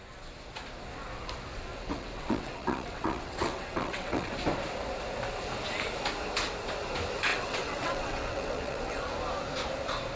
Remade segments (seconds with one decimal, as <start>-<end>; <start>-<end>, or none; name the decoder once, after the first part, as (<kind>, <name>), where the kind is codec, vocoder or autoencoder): 1.7-4.3 (vocoder, WaveNeXt); 7.3-9.1